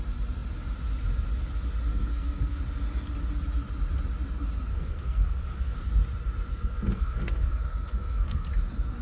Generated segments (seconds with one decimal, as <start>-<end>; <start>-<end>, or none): 1.9-2.6; 4.7-5.9; 6.5-8.5